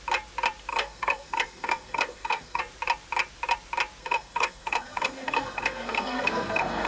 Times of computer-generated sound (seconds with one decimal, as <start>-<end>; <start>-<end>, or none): 0.7-2.6; 4.0-6.9